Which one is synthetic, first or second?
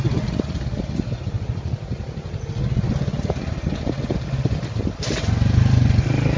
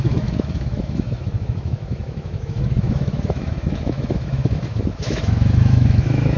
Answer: second